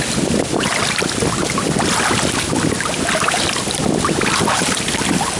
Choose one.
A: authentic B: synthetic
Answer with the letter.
A